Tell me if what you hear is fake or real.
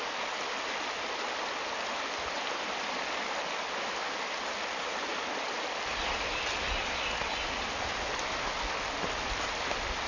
real